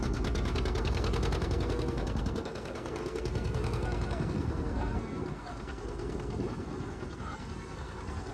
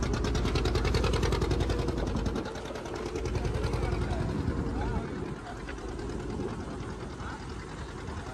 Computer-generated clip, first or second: first